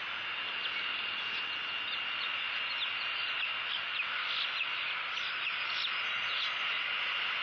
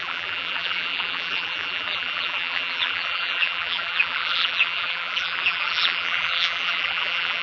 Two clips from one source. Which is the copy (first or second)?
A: second